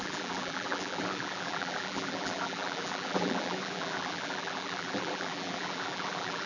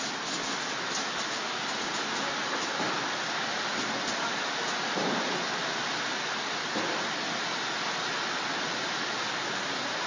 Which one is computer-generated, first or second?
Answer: first